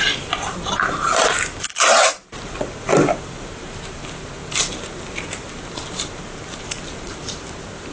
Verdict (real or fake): fake